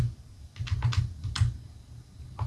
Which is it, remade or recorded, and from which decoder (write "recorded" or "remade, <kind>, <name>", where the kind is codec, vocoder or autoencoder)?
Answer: recorded